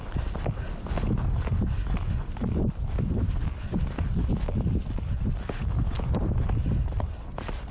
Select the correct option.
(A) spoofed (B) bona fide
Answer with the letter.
B